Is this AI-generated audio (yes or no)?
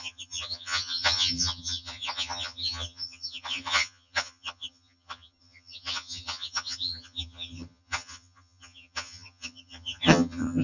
yes